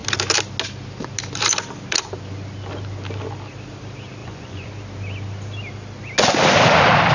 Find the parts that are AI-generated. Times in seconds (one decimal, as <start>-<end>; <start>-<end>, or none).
4.2-4.7